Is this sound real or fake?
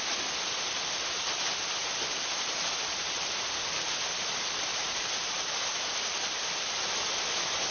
fake